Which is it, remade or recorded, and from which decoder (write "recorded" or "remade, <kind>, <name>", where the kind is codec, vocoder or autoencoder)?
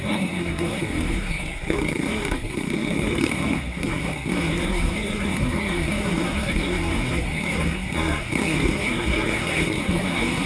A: remade, codec, SNAC